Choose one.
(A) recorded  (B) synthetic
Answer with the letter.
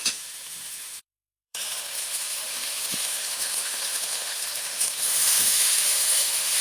B